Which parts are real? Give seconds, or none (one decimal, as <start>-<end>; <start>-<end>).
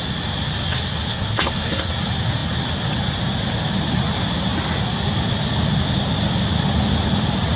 0.0-1.1; 1.9-7.6